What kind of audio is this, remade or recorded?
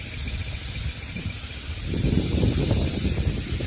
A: remade